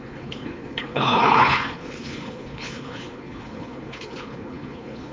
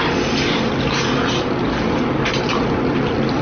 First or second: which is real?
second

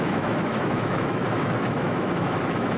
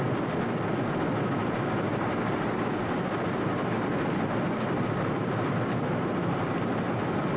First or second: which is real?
second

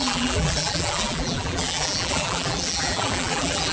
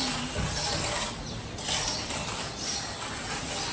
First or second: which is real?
second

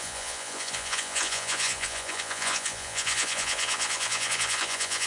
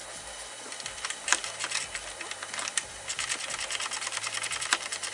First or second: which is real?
second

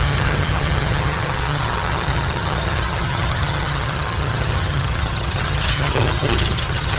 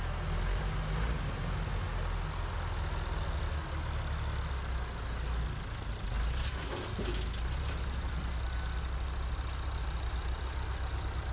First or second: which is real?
second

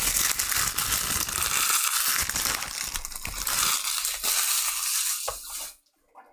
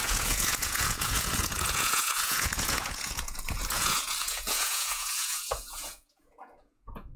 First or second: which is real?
first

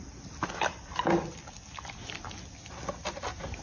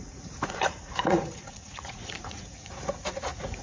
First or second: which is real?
first